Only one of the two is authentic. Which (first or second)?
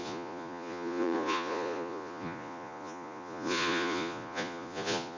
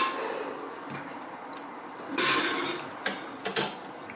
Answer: second